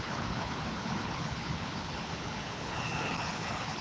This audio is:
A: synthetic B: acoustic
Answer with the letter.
A